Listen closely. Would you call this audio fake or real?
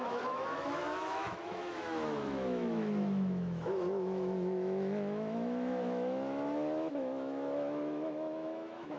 fake